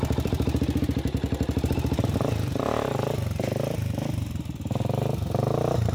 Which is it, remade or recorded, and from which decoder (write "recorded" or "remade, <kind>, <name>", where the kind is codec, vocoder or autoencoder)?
remade, vocoder, BigVGAN v2